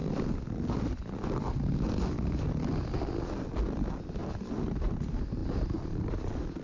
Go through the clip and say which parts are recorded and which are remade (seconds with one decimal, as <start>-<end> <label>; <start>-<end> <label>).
0.0-6.6 recorded